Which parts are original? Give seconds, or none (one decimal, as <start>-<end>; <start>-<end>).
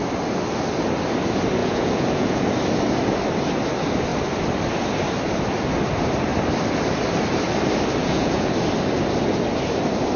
0.0-1.6; 2.4-8.0; 8.5-10.2